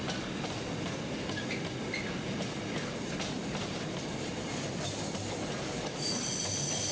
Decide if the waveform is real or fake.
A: real